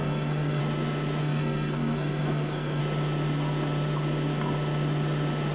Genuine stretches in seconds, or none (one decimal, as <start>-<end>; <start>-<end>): 0.6-1.2; 2.8-5.5

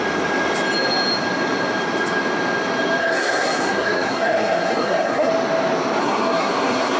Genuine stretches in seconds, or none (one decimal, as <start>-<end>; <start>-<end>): 0.0-3.0; 5.3-6.0

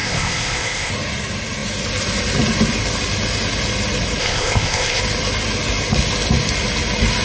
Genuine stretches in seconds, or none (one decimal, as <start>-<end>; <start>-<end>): 0.9-4.2; 5.0-7.2